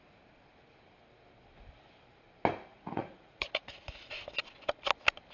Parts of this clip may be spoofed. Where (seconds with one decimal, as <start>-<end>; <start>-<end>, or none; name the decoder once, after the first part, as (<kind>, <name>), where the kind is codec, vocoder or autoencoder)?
2.7-4.0 (vocoder, Vocos)